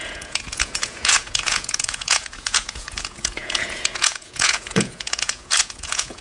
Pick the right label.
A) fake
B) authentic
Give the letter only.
A